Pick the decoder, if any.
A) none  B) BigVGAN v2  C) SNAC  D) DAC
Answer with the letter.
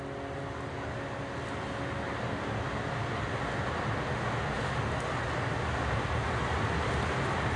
A